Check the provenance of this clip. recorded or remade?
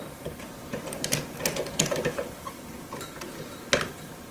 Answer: recorded